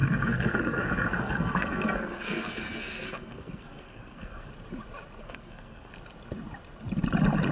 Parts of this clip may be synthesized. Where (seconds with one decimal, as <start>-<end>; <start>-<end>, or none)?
0.0-4.5; 5.2-5.9